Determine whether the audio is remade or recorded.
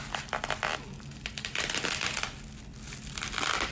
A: recorded